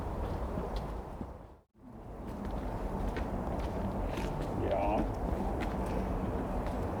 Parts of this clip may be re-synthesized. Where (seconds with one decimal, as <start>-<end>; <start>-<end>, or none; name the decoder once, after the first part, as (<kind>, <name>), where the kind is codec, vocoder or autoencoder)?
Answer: 0.0-4.8 (vocoder, BigVGAN v2); 5.3-7.0